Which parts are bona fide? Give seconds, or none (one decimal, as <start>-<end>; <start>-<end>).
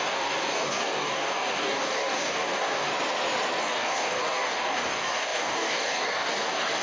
2.9-3.6